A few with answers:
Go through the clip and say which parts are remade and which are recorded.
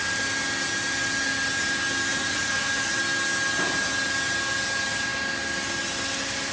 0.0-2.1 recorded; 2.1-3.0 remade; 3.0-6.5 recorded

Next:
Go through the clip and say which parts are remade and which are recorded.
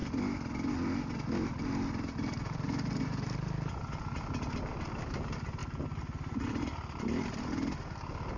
0.0-8.4 recorded